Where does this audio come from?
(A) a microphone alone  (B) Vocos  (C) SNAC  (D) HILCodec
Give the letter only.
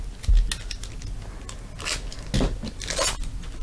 A